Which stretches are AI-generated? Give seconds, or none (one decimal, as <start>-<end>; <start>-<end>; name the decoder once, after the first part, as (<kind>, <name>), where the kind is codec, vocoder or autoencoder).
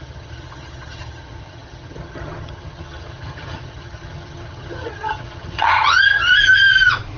0.0-6.3 (vocoder, HiFi-GAN)